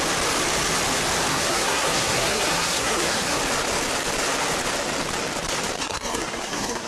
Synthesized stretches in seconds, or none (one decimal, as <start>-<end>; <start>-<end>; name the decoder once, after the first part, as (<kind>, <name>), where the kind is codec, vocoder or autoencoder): 1.3-3.4 (codec, SNAC); 5.8-6.9